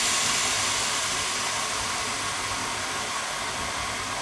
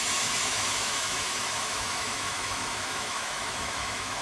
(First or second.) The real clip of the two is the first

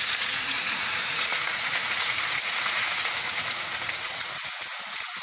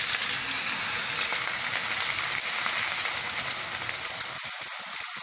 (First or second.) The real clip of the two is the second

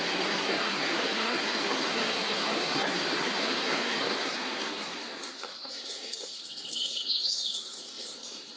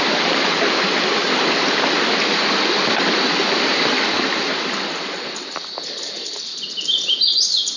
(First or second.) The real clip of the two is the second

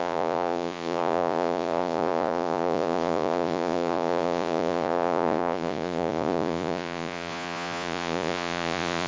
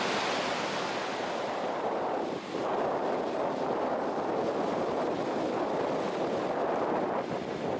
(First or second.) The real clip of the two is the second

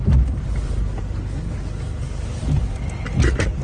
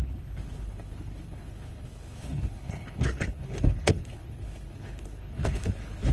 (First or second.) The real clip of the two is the first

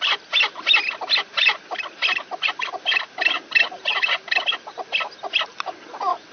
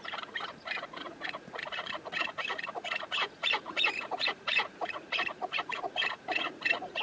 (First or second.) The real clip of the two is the first